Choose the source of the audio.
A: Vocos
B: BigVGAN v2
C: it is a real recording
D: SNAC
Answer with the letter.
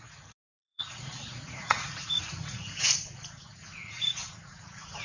A